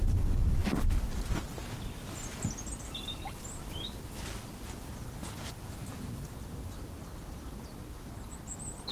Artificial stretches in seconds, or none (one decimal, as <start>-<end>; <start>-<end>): none